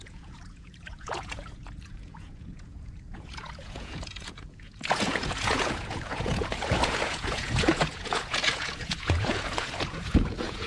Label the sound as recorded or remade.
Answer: remade